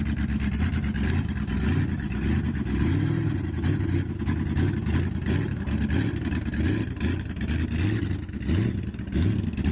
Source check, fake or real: real